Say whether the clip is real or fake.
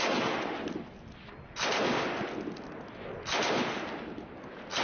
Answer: real